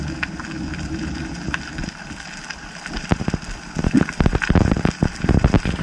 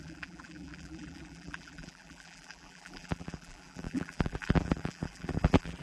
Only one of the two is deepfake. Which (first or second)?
second